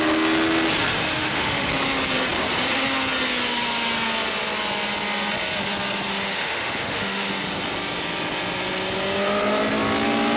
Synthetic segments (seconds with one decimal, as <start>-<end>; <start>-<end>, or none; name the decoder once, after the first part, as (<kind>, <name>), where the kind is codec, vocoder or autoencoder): 0.9-1.7 (autoencoder, DAC-VAE); 6.1-7.3